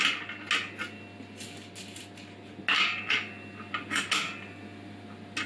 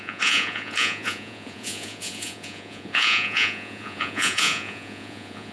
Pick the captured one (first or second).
first